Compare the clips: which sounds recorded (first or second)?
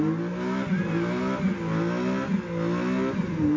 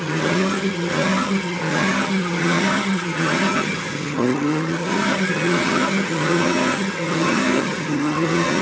first